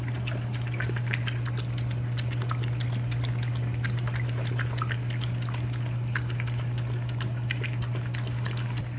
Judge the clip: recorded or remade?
recorded